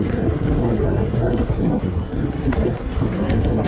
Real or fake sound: fake